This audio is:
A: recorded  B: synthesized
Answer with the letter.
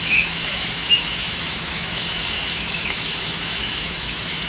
B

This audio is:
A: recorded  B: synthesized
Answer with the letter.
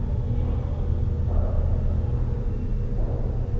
A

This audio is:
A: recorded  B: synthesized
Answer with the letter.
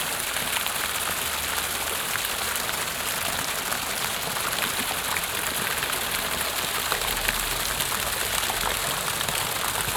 A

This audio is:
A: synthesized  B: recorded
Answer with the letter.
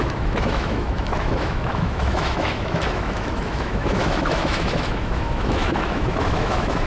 A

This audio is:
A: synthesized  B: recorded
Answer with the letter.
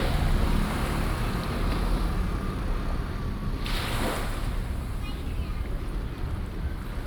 B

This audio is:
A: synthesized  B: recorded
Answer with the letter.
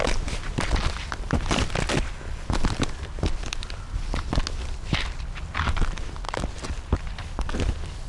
B